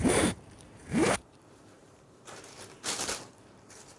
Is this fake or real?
fake